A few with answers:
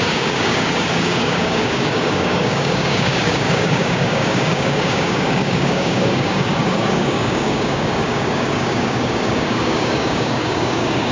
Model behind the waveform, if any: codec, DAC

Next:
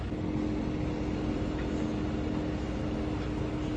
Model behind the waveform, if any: none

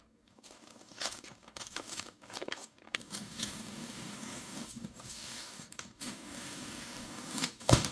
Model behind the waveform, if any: codec, DAC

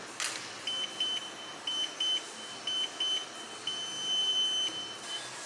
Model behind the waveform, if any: none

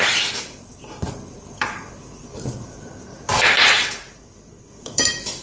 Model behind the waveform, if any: vocoder, BigVGAN v2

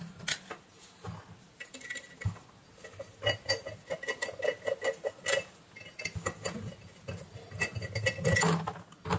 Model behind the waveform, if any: none